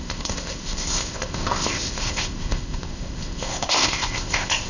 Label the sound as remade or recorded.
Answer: remade